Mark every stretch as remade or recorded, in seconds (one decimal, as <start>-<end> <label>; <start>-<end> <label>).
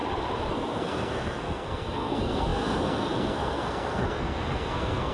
0.0-0.5 recorded; 0.5-5.1 remade